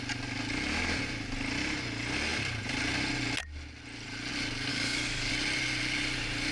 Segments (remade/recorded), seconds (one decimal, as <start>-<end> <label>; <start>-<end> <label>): 0.0-4.7 recorded; 4.7-5.3 remade; 5.3-6.5 recorded